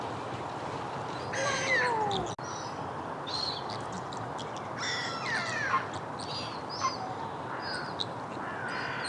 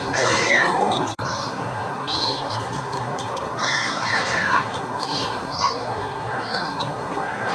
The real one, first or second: first